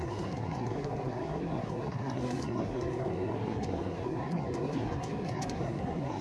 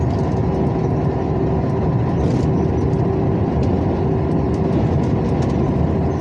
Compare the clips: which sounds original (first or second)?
second